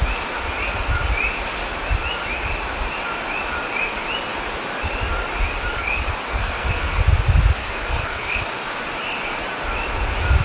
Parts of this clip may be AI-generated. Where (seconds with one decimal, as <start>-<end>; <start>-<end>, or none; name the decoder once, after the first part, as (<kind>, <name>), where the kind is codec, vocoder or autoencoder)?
6.3-7.0 (codec, SNAC); 7.6-8.4